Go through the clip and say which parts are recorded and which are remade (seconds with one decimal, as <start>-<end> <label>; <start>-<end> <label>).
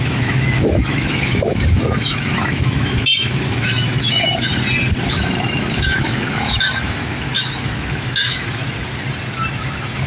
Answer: 0.0-4.5 remade; 4.5-5.1 recorded; 5.1-8.6 remade; 8.6-9.5 recorded; 9.5-10.1 remade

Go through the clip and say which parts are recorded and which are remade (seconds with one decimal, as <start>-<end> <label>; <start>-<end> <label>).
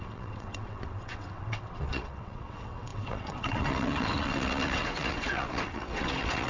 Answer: 0.0-6.5 remade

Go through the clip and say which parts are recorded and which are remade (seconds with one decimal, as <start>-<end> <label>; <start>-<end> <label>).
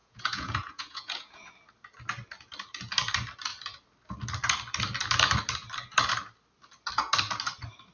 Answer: 0.0-1.5 remade; 1.5-7.9 recorded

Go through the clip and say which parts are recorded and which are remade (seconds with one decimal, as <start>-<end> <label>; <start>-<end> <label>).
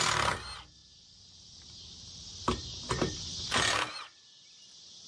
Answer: 0.0-5.1 recorded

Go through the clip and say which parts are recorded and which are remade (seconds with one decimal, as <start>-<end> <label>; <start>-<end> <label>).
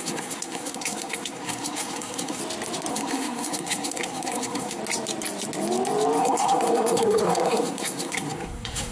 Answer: 0.0-2.4 remade; 2.4-2.9 recorded; 2.9-4.8 remade; 4.8-6.2 recorded; 6.2-8.9 remade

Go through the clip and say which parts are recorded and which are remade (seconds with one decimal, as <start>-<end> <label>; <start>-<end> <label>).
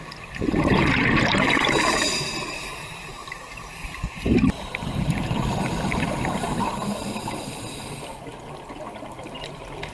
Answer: 0.0-1.3 recorded; 1.3-5.5 remade; 5.5-9.9 recorded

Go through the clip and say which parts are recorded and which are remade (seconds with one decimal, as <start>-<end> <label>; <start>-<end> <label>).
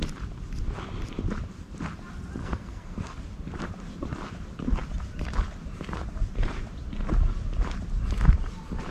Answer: 0.0-2.4 recorded; 2.4-3.2 remade; 3.2-8.9 recorded